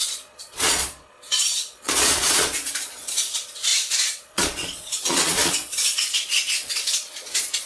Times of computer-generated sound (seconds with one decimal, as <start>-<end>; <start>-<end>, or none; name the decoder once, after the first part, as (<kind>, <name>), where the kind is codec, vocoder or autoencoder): 0.0-7.7 (vocoder, Vocos)